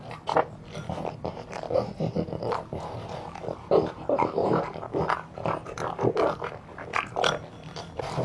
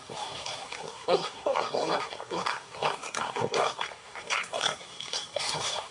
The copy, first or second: second